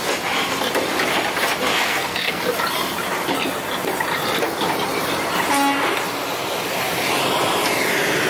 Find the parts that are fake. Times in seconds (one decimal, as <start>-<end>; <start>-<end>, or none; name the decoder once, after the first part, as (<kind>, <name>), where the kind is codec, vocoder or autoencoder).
1.7-2.4 (codec, SNAC)